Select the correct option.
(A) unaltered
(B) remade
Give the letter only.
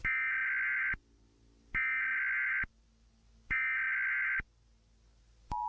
A